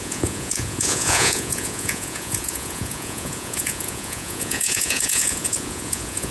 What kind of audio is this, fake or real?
fake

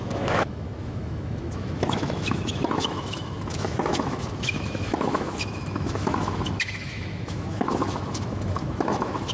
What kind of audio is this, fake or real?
fake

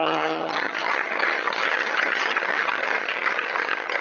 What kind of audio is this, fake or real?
fake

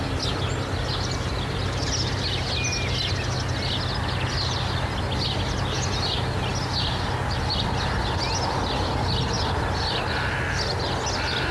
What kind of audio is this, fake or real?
real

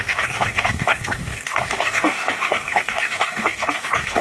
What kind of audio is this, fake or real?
fake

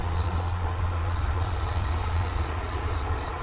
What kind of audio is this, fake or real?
fake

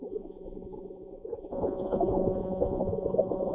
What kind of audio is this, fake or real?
fake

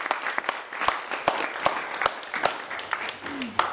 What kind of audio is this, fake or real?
real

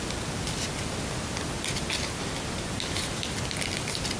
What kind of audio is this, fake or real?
real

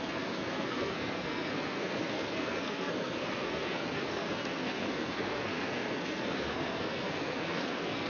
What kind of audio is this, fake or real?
fake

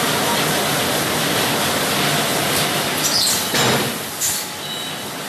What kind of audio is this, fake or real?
real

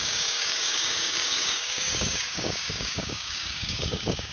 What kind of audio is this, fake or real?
fake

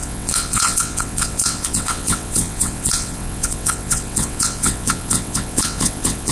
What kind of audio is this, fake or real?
fake